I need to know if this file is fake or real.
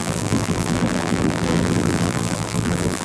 fake